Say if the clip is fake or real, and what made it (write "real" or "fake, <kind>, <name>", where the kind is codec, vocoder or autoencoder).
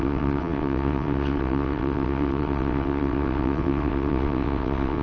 fake, vocoder, WaveNeXt